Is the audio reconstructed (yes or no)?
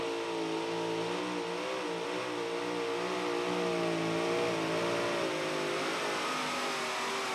no